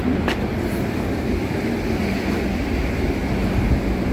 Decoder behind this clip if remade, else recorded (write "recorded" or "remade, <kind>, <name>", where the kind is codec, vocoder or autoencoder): recorded